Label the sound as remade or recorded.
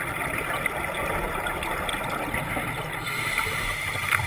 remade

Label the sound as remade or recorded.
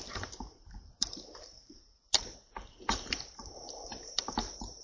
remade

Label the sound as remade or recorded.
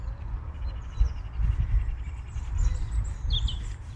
remade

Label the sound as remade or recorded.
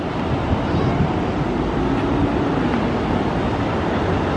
recorded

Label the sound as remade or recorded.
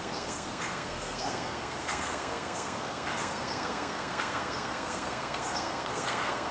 remade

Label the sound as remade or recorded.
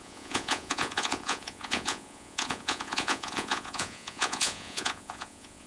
remade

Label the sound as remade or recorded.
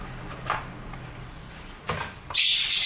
recorded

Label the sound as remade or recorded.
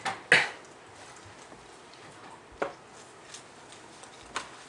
recorded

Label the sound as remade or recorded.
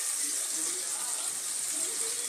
recorded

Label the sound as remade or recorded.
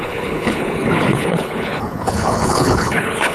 remade